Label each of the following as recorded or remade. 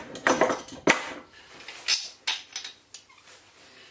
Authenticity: recorded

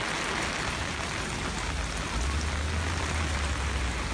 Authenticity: recorded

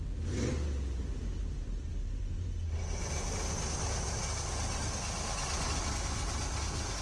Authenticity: recorded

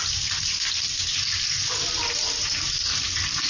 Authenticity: remade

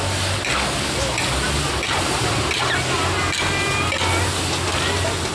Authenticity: recorded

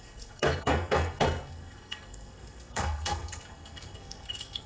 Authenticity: remade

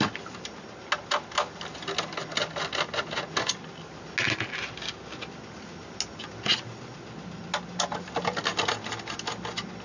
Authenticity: recorded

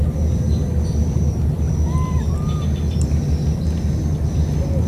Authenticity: recorded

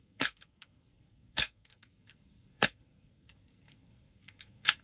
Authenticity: remade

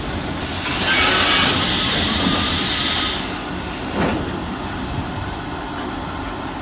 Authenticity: recorded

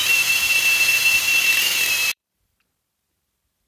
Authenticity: remade